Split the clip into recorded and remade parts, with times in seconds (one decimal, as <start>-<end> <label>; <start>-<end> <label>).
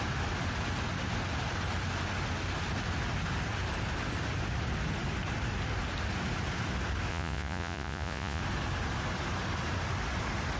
0.0-7.1 recorded; 7.1-8.4 remade; 8.4-10.6 recorded